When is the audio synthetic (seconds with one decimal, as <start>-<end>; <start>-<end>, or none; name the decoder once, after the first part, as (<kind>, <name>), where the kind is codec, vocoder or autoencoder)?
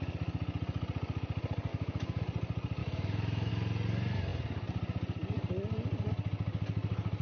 1.7-2.2 (autoencoder, DAC-VAE); 2.8-3.5